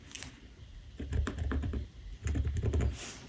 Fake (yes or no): yes